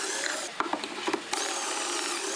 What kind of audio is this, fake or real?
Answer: real